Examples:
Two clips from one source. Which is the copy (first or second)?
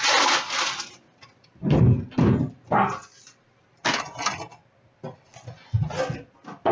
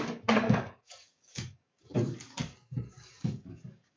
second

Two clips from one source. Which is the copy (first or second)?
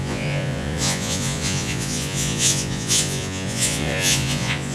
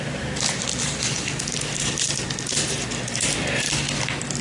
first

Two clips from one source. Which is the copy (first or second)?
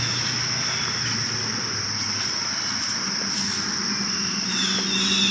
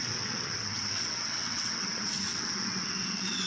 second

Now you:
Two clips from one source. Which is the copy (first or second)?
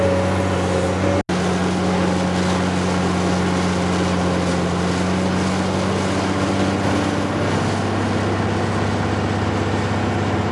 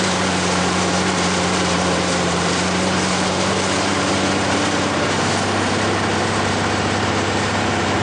second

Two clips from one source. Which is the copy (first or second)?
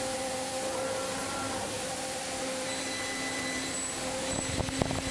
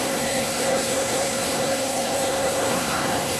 second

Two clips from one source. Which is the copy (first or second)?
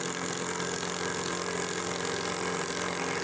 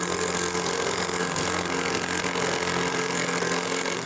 second